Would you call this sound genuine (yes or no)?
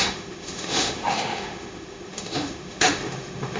no